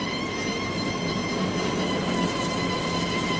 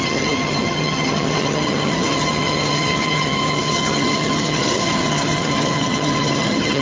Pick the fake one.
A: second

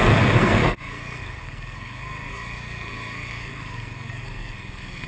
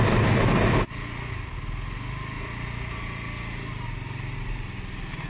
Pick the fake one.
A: first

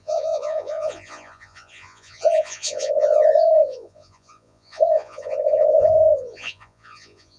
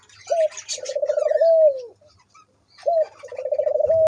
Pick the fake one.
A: first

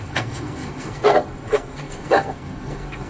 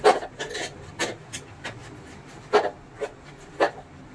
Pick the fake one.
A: first